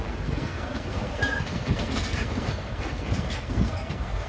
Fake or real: fake